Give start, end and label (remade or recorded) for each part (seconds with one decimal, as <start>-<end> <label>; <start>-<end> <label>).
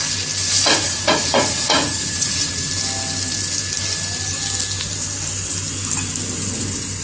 0.0-0.7 recorded; 0.7-2.7 remade; 2.7-7.0 recorded